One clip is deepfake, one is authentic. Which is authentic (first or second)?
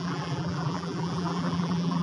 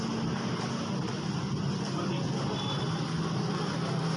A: second